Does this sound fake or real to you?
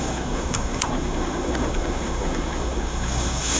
fake